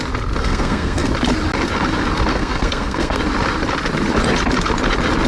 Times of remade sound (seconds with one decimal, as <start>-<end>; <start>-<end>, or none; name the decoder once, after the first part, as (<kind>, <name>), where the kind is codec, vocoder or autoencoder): 0.4-1.1 (codec, SNAC); 2.3-3.2